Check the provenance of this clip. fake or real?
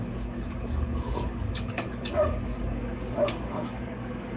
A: fake